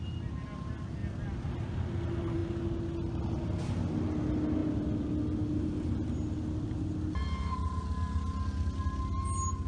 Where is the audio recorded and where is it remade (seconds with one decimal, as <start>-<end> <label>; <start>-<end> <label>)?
0.0-9.7 recorded